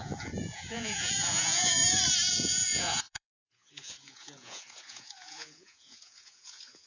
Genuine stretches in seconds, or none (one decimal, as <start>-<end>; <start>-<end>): 1.8-2.3